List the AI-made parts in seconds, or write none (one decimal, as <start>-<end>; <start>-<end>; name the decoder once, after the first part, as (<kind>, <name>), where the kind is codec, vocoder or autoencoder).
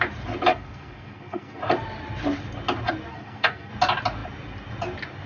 0.5-1.6 (codec, SNAC); 3.1-3.7